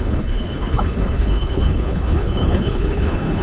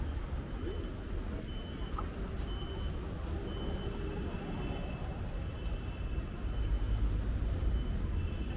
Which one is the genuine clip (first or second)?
second